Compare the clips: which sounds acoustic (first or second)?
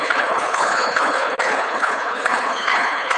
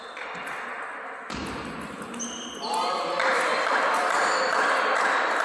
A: second